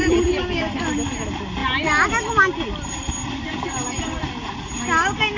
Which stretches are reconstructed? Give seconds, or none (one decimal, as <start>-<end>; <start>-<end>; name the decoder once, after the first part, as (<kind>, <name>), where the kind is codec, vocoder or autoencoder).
0.0-0.8 (vocoder, BigVGAN v2)